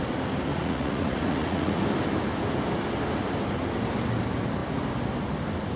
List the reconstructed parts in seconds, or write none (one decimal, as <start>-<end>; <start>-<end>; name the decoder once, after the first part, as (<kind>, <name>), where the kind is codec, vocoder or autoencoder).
0.5-1.8 (vocoder, Vocos)